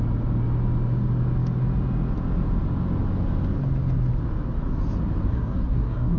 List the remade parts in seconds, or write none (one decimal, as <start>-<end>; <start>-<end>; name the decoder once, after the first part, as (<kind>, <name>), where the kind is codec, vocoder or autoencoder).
5.3-6.2 (codec, SNAC)